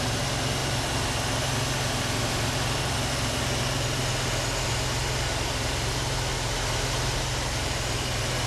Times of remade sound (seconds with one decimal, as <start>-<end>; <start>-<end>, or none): none